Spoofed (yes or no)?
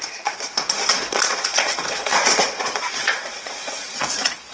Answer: yes